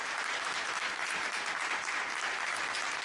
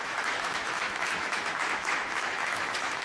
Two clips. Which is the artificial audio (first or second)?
second